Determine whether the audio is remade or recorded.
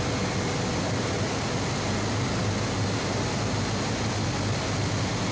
recorded